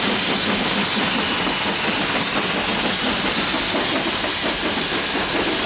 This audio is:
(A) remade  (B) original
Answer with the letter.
B